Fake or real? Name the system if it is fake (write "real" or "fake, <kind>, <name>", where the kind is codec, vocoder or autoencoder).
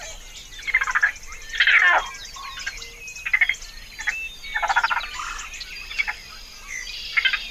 real